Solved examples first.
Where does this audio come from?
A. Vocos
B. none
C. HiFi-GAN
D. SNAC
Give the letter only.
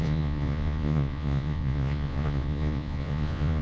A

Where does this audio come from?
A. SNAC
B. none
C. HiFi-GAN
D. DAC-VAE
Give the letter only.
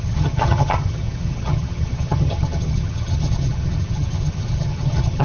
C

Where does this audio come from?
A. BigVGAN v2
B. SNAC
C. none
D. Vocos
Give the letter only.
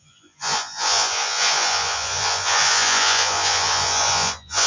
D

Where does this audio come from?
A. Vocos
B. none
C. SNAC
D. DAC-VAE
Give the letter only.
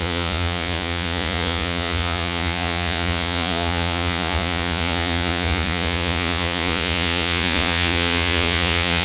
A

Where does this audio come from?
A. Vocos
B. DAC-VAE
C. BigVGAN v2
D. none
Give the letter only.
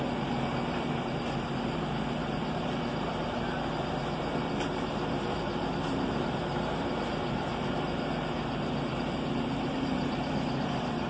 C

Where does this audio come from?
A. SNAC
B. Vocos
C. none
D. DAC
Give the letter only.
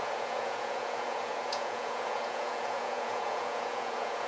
B